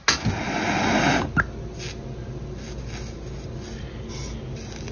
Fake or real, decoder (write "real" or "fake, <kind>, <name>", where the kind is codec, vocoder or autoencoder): real